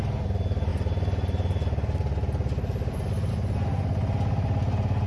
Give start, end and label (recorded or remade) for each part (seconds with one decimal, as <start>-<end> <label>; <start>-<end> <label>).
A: 0.0-5.1 recorded